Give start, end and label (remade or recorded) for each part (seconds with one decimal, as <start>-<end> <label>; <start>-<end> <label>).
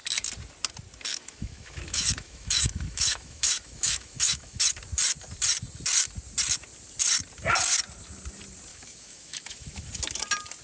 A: 0.0-1.1 recorded; 1.1-4.7 remade; 4.7-8.7 recorded; 8.7-9.9 remade; 9.9-10.6 recorded